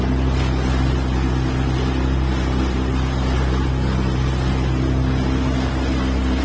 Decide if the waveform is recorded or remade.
recorded